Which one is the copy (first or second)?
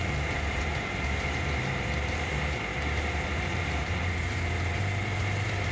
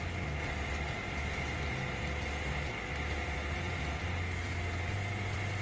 first